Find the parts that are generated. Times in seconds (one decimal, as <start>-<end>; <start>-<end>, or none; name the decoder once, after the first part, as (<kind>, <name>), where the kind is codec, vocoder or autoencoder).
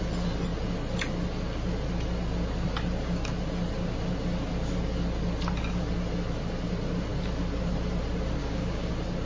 8.4-8.9 (codec, DAC)